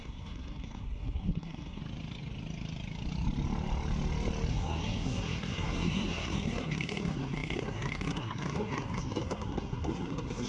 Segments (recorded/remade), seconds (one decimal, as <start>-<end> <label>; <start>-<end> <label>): 0.0-1.8 remade; 1.8-4.5 recorded; 4.5-10.5 remade